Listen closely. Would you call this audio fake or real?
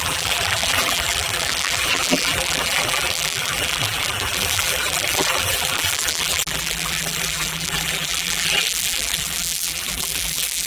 fake